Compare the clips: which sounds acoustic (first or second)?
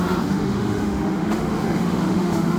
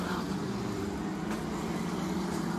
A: second